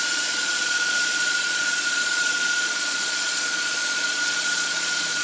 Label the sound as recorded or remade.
remade